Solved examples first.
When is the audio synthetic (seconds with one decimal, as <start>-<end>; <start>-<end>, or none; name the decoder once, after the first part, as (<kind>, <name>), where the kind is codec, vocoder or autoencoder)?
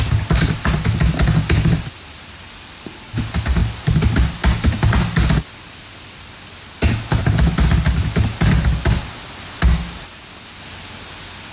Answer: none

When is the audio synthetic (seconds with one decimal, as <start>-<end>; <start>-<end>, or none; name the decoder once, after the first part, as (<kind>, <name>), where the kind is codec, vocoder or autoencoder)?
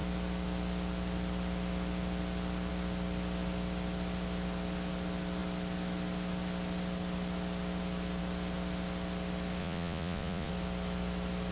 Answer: 9.6-10.5 (vocoder, Vocos)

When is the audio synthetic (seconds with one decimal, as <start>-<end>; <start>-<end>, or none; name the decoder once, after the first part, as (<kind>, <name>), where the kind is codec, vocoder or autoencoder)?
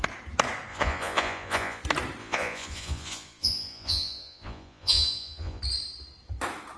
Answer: 0.7-1.8 (vocoder, Vocos); 2.2-5.6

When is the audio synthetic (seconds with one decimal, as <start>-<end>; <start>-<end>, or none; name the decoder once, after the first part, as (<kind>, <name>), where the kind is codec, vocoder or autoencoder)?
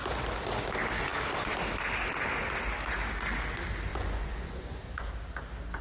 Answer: 3.9-5.1 (vocoder, Vocos)